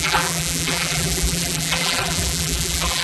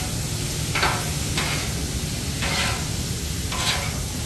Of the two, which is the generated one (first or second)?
first